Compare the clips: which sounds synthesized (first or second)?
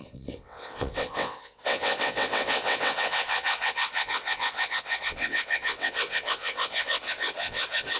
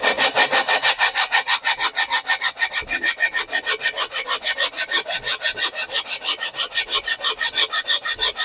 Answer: first